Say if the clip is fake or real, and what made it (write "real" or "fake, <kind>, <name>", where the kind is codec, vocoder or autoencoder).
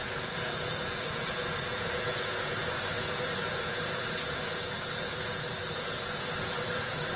fake, vocoder, Vocos